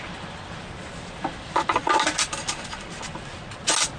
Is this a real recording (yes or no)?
yes